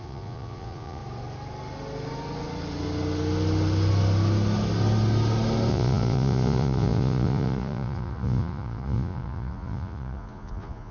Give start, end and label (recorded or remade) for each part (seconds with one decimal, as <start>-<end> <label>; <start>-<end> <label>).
0.0-1.0 remade; 1.0-5.7 recorded; 5.7-10.9 remade